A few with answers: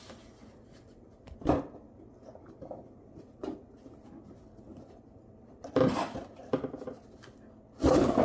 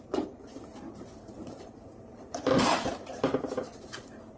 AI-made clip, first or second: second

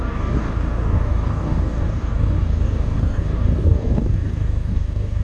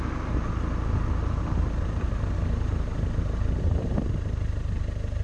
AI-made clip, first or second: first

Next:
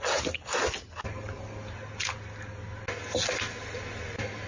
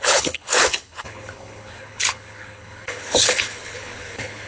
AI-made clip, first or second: second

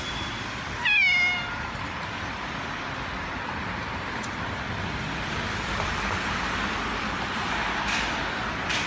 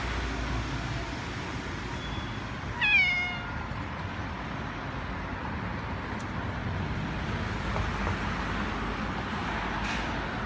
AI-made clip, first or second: first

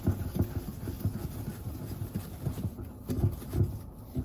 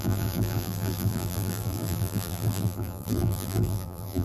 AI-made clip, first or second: second